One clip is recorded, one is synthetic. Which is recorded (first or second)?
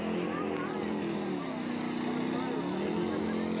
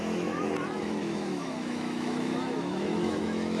first